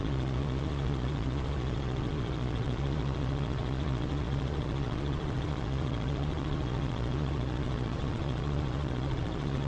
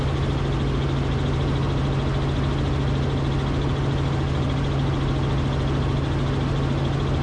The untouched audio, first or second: second